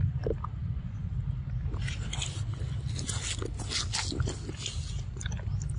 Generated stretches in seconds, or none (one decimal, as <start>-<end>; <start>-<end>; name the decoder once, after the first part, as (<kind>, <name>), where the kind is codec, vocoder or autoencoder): 0.6-1.1 (vocoder, Vocos)